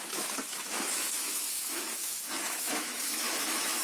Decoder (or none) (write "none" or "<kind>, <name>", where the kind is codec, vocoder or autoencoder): autoencoder, DAC-VAE